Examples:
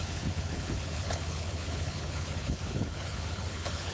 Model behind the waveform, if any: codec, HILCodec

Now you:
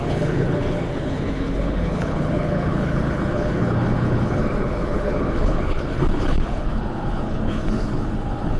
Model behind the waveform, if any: codec, HILCodec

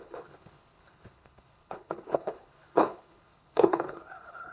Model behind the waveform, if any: codec, HILCodec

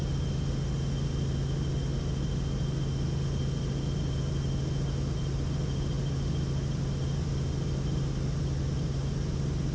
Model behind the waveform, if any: none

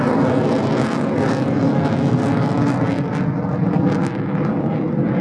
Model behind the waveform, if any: none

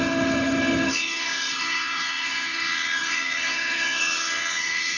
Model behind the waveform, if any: codec, HILCodec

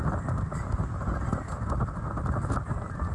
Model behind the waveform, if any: none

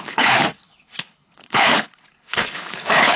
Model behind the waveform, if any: codec, HILCodec